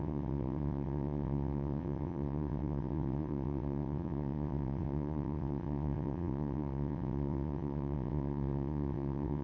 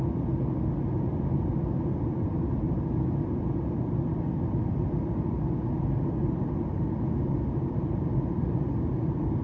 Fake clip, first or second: first